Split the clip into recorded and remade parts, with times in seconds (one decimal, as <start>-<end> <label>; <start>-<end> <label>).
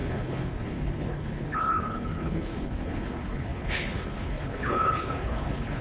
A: 0.0-5.8 remade